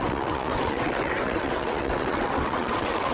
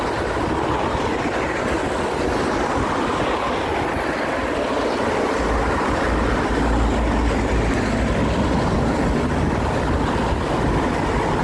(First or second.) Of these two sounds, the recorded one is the second